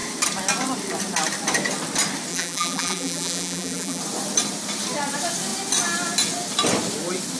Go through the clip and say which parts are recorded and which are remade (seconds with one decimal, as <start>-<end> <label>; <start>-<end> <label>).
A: 0.0-2.3 recorded; 2.3-4.0 remade; 4.0-7.4 recorded

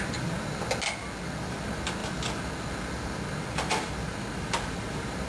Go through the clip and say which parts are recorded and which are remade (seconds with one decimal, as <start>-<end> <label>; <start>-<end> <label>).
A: 0.0-5.3 recorded